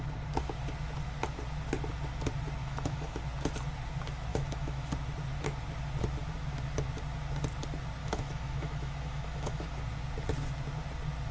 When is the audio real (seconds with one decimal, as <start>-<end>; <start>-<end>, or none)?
0.0-2.6; 3.2-4.3; 4.9-8.0; 9.8-11.3